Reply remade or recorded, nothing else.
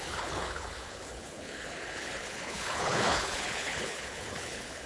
remade